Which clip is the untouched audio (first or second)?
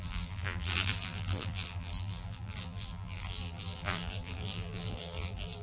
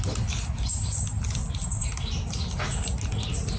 second